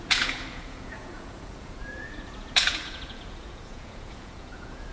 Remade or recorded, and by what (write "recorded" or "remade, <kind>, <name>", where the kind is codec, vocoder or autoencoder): remade, vocoder, Vocos